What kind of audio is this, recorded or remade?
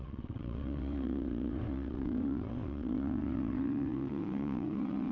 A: remade